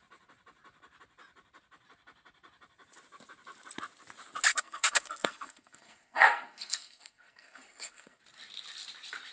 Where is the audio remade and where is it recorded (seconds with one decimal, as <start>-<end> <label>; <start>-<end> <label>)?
0.0-4.5 recorded; 4.5-8.2 remade; 8.2-9.3 recorded